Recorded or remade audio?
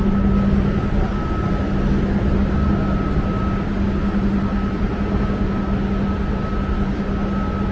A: recorded